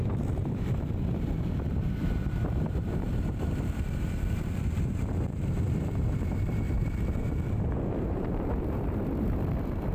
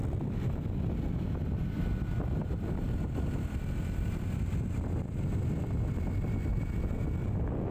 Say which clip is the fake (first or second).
first